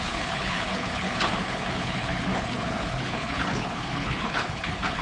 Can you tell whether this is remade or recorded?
remade